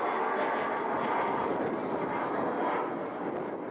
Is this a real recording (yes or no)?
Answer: yes